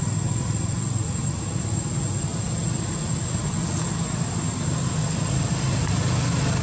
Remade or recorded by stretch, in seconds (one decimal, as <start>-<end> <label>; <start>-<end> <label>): 0.0-1.2 recorded; 1.2-1.8 remade; 1.8-6.6 recorded